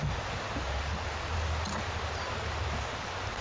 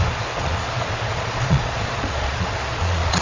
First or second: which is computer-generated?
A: second